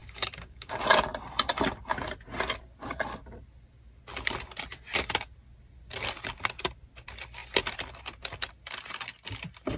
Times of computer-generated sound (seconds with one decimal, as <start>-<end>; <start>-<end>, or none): 0.0-0.8